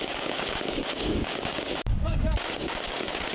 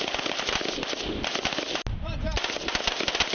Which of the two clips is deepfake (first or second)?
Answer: first